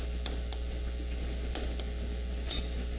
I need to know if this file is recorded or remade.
recorded